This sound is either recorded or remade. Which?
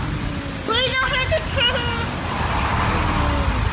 recorded